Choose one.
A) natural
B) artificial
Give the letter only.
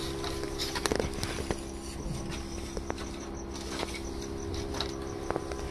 A